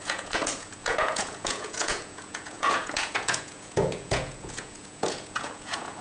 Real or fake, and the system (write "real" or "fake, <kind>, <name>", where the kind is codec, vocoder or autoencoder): fake, vocoder, Vocos